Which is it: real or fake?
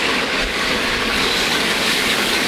fake